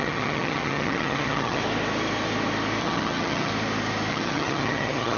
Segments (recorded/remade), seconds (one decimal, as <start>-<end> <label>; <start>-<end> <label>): 0.0-1.6 remade; 1.6-2.8 recorded; 2.8-3.5 remade; 3.5-4.1 recorded; 4.1-5.2 remade